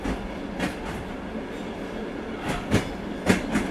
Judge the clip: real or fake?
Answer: real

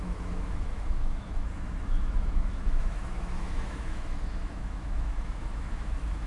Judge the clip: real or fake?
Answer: fake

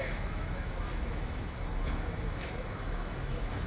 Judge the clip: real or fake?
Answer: fake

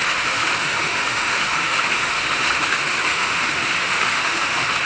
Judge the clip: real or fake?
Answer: fake